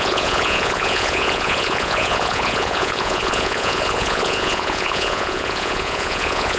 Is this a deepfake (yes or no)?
yes